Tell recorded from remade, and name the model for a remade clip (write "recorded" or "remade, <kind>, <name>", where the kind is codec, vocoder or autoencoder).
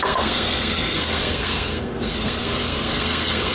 remade, codec, SNAC